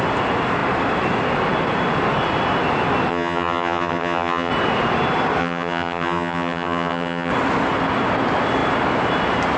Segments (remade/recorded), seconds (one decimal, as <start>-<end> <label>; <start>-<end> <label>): 0.0-3.1 recorded; 3.1-4.5 remade; 4.5-5.4 recorded; 5.4-7.3 remade; 7.3-9.6 recorded